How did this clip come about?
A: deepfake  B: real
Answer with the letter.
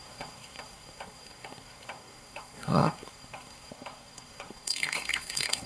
A